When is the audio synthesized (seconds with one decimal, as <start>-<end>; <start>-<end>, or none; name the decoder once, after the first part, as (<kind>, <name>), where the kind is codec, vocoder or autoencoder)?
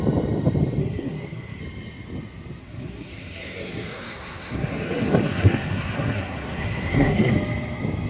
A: 0.8-1.6 (codec, SNAC); 2.6-7.3